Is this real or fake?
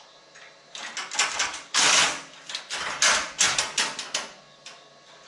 real